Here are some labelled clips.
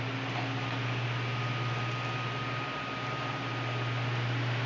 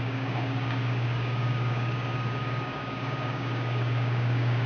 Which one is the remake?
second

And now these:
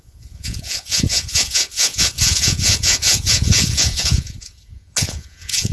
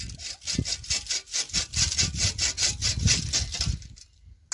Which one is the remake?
first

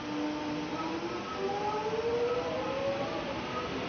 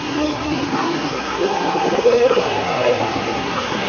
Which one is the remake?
second